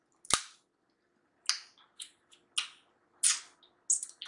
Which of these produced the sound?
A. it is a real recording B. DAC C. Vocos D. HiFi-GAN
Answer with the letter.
A